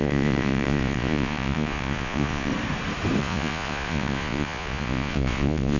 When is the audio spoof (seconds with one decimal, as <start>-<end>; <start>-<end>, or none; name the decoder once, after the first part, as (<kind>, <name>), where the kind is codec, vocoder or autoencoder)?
0.0-2.5 (vocoder, Vocos); 3.2-5.8